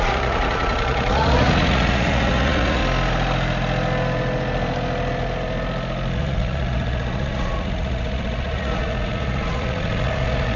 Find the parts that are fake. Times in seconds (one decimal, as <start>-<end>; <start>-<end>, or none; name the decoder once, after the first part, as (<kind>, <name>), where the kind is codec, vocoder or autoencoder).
0.0-2.8 (vocoder, Vocos); 6.1-10.6